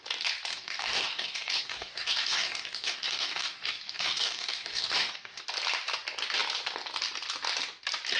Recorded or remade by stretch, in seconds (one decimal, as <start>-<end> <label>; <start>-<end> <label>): 0.0-0.5 recorded; 0.5-5.4 remade; 5.4-8.2 recorded